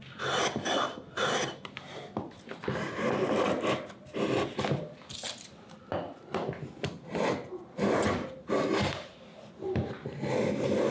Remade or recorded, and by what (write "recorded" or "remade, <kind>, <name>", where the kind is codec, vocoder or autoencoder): recorded